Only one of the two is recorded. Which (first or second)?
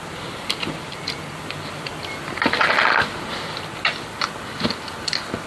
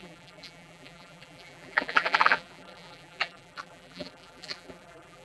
first